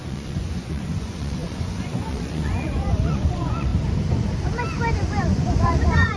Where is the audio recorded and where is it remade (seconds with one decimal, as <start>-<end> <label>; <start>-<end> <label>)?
0.0-3.7 remade; 3.7-5.2 recorded; 5.2-6.2 remade